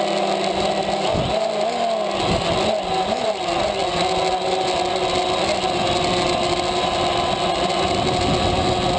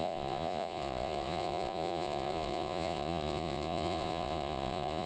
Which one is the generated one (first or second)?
second